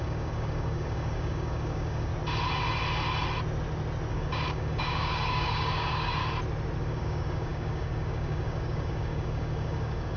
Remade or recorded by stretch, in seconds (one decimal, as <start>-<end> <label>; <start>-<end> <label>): 0.0-2.1 remade; 2.1-4.1 recorded; 4.1-6.2 remade; 6.2-6.8 recorded; 6.8-10.2 remade